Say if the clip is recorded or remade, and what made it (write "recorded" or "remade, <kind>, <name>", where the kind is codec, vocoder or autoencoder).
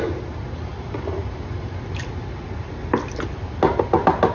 recorded